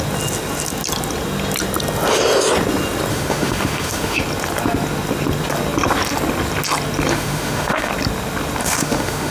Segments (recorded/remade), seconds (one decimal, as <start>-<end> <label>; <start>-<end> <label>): 0.0-3.1 recorded; 3.1-4.2 remade; 4.2-7.1 recorded; 7.1-7.9 remade; 7.9-8.6 recorded; 8.6-9.3 remade